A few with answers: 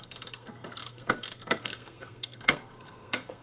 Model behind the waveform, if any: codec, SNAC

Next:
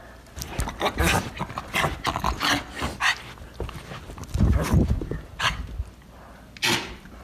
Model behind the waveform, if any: none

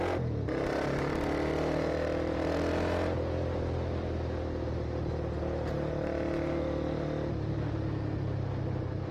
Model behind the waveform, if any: none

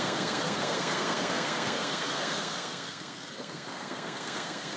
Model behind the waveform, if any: codec, SNAC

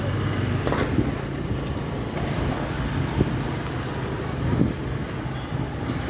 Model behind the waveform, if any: none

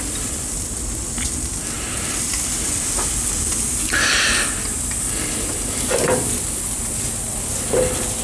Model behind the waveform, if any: none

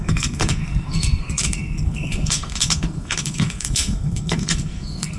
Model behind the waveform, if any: codec, SNAC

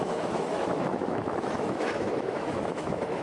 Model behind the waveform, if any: autoencoder, DAC-VAE